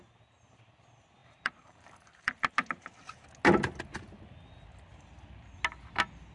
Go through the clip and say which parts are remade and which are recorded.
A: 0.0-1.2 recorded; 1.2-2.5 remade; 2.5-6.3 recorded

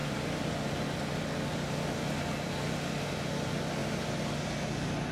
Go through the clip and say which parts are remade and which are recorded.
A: 0.0-3.1 remade; 3.1-3.8 recorded; 3.8-4.4 remade; 4.4-5.1 recorded